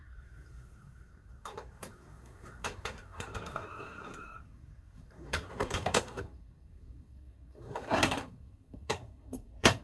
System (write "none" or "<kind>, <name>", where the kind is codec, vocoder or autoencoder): codec, SNAC